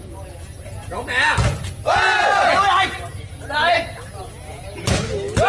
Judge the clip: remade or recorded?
recorded